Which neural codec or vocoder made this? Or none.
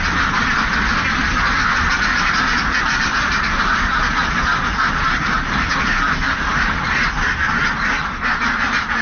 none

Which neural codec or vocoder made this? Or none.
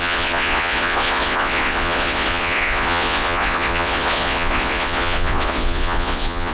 vocoder, Vocos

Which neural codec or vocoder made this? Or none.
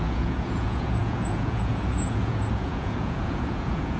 vocoder, Vocos